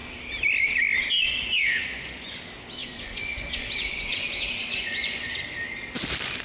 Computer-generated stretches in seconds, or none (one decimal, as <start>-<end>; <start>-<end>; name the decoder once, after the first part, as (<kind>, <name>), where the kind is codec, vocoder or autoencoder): 1.2-2.4 (vocoder, Vocos); 2.8-5.3